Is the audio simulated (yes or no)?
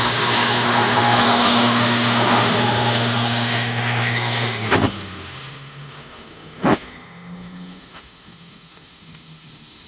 yes